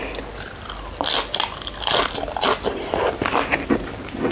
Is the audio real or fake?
real